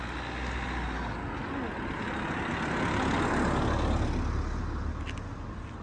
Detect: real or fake real